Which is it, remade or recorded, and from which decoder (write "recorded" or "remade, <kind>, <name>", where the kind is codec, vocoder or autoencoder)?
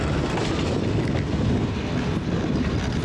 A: recorded